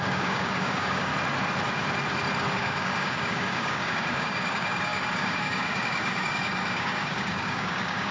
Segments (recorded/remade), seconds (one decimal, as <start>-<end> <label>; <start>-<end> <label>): 0.0-1.1 remade; 1.1-2.5 recorded; 2.5-8.1 remade